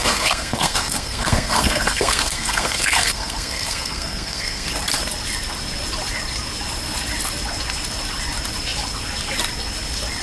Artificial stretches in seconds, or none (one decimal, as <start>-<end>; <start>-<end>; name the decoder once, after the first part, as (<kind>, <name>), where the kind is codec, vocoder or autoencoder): 0.0-4.7 (codec, SNAC)